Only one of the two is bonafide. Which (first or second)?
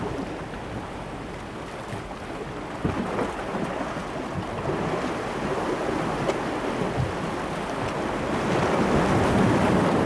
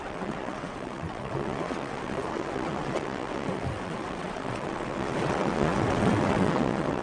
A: first